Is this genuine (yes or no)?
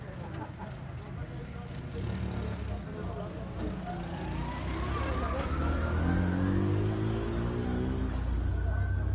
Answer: yes